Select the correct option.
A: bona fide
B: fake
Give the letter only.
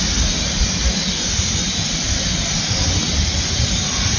A